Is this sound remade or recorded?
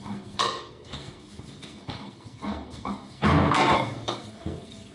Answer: remade